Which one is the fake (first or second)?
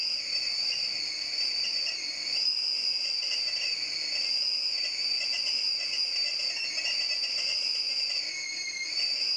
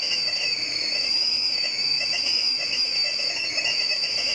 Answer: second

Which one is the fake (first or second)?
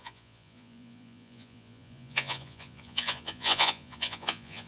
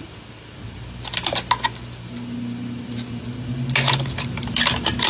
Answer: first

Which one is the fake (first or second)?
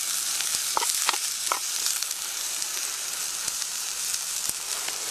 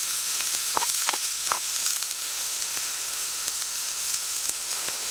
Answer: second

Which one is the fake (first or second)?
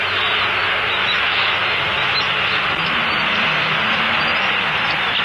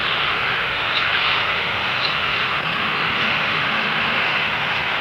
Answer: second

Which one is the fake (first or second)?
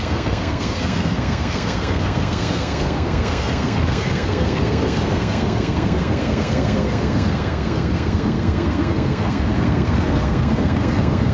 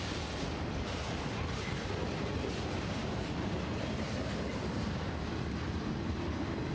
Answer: first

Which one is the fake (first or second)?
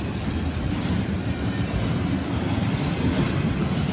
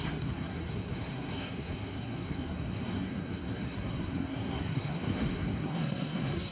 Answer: second